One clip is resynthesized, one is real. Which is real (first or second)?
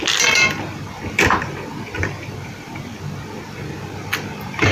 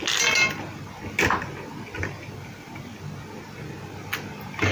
second